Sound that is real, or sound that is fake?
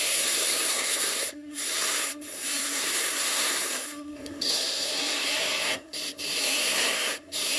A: fake